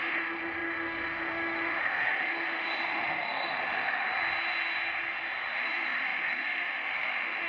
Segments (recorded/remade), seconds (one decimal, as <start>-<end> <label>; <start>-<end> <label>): 0.0-4.1 remade; 4.1-5.5 recorded; 5.5-7.5 remade